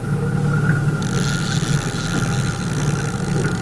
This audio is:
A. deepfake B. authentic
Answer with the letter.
B